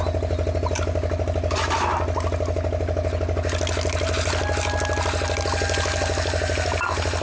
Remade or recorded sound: recorded